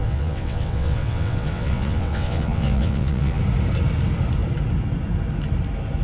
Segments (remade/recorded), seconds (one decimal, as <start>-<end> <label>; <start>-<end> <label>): 0.0-3.4 remade; 3.4-6.0 recorded